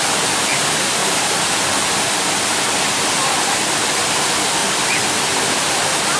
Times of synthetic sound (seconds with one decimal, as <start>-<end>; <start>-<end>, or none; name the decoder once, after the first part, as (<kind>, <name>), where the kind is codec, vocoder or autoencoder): 3.2-3.8 (vocoder, BigVGAN v2); 4.6-5.2